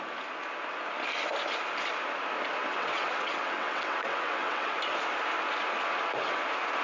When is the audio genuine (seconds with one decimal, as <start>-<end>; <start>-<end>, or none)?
0.0-2.6; 4.7-6.8